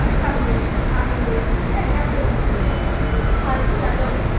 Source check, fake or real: real